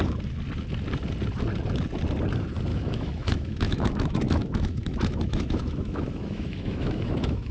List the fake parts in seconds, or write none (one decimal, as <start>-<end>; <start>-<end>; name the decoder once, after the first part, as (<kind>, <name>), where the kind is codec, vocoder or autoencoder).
2.7-7.5 (autoencoder, DAC-VAE)